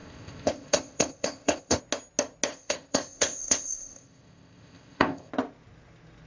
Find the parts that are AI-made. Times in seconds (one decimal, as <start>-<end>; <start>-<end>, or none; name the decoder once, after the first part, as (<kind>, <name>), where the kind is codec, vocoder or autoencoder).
0.0-1.8 (codec, ZipCodec); 2.5-5.3